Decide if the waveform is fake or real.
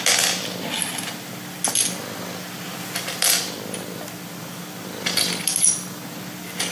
real